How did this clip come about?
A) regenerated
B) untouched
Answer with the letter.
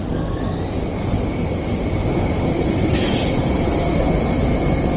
B